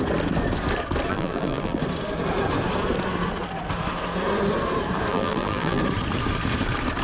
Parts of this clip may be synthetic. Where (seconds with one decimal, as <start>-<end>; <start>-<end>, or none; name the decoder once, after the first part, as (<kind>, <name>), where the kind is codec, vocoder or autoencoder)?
1.1-1.8 (vocoder, BigVGAN v2); 5.1-5.8